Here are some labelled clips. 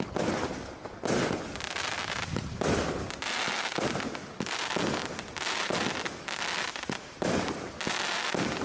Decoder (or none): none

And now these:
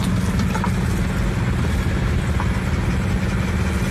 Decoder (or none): none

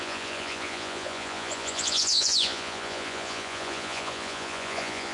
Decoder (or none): vocoder, Vocos